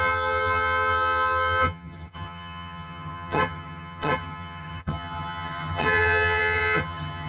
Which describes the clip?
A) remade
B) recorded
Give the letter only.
A